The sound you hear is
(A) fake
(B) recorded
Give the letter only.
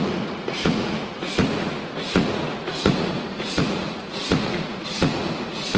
A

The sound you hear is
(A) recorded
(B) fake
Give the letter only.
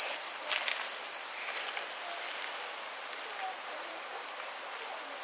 A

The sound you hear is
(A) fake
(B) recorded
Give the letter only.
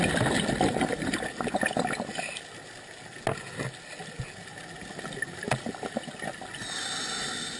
B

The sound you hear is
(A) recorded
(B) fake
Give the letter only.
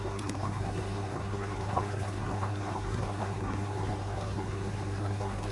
B